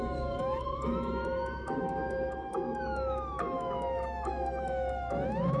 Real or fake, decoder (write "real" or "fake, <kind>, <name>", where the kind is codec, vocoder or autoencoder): fake, autoencoder, DAC-VAE